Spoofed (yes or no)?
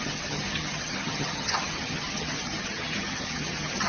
yes